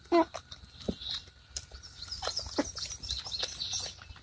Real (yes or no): yes